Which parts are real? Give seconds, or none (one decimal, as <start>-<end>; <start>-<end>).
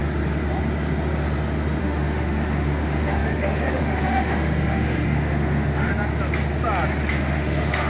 0.0-1.8; 5.9-7.1